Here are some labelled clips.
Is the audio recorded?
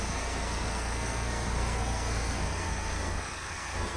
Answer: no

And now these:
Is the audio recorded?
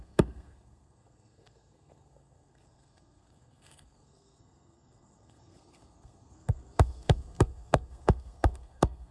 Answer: no